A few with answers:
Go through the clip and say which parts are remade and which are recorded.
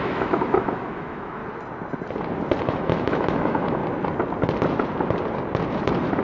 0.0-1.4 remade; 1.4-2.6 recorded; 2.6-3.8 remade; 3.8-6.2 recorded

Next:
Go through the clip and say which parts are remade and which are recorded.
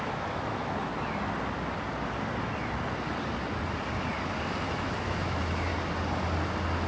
0.0-0.9 remade; 0.9-4.7 recorded; 4.7-5.7 remade; 5.7-6.9 recorded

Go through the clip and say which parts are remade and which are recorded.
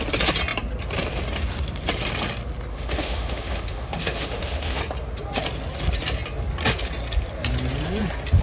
0.0-2.7 recorded; 2.7-4.8 remade; 4.8-8.4 recorded